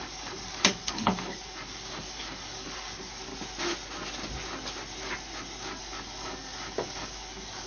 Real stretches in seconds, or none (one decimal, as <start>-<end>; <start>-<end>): 3.3-5.8